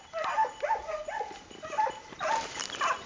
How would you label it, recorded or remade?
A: recorded